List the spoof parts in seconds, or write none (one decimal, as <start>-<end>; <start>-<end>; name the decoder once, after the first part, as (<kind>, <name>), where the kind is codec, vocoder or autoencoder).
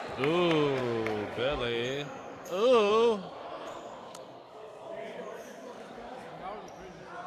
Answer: 0.8-2.9 (codec, DAC); 3.6-6.3